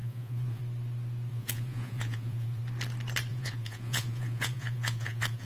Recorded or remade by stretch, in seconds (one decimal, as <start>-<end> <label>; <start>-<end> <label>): 0.0-0.6 remade; 0.6-1.3 recorded; 1.3-2.6 remade; 2.6-3.3 recorded; 3.3-5.5 remade